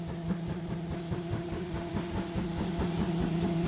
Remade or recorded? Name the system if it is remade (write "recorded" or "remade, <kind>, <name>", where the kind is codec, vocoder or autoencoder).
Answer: recorded